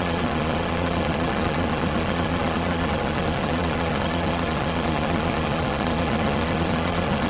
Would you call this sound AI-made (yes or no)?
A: yes